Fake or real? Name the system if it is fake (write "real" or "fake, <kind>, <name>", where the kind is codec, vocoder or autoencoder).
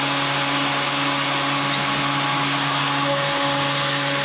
real